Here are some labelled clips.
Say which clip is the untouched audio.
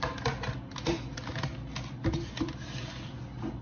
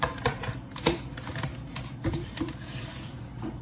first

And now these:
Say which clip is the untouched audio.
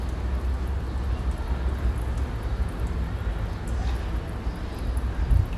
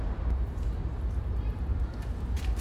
first